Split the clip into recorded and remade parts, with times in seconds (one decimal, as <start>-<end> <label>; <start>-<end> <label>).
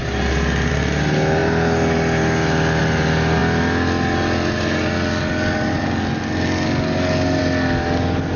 0.0-8.4 recorded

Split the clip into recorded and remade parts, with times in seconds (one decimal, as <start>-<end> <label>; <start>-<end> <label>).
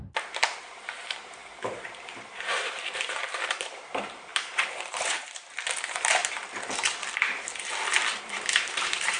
0.0-4.3 remade; 4.3-4.9 recorded; 4.9-6.2 remade; 6.2-8.2 recorded; 8.2-9.2 remade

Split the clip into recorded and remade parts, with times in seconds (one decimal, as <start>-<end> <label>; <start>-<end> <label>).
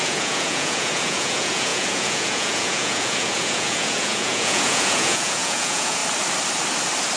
0.0-6.0 remade; 6.0-7.2 recorded